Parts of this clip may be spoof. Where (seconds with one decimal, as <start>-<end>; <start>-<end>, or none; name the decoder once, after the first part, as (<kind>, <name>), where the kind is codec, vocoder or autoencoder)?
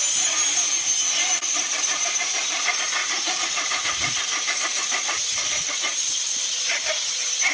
3.0-6.5 (vocoder, Vocos)